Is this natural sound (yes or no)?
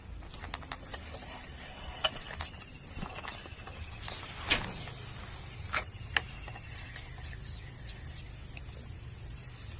yes